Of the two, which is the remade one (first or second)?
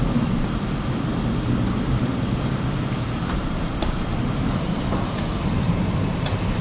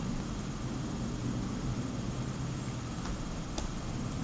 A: first